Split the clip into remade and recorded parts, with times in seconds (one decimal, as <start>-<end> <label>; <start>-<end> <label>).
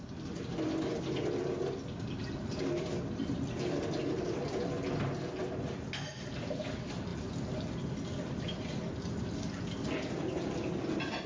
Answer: 0.0-11.3 recorded